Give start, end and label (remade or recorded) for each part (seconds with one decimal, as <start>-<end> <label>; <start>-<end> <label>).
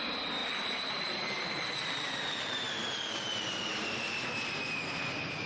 0.0-0.4 recorded; 0.4-3.7 remade; 3.7-5.5 recorded